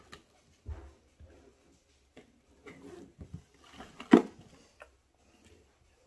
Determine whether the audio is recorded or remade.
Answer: recorded